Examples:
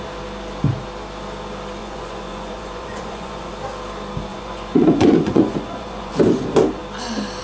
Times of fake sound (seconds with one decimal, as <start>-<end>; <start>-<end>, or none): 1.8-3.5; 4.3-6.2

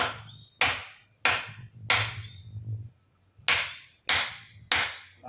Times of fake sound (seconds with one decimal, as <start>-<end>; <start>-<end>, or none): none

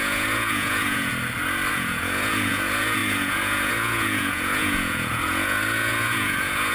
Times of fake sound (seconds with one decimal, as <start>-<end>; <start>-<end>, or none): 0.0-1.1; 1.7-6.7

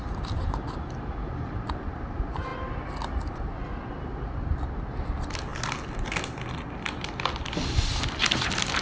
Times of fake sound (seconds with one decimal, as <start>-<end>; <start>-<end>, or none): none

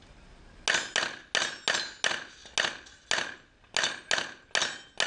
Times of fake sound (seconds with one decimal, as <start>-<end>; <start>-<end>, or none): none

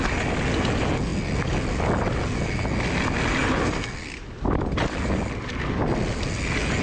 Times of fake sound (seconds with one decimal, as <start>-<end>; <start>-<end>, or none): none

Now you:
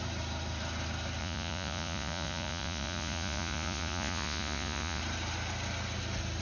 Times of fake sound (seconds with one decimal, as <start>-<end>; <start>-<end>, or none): 1.2-5.0